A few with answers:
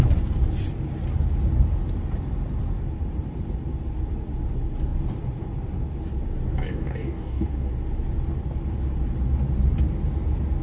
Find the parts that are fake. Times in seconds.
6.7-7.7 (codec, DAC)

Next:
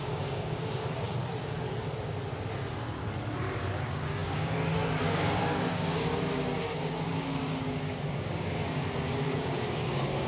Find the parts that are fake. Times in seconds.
0.0-1.2 (codec, DAC); 3.8-10.3

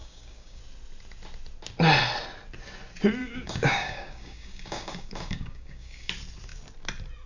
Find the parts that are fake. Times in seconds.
0.0-0.6 (codec, DAC); 3.2-6.1